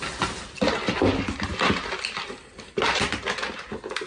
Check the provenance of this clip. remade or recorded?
recorded